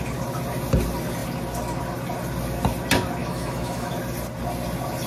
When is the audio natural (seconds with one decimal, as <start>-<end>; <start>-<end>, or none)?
0.0-3.2; 3.9-5.1